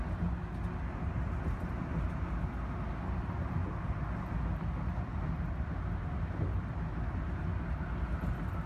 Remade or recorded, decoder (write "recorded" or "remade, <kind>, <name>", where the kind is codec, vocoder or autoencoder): recorded